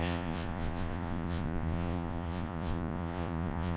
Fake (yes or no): yes